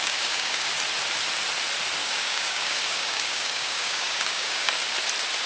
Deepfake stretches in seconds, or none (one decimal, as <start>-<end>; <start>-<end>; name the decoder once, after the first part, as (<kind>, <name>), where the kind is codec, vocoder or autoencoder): 0.0-0.8 (codec, DAC); 2.0-4.7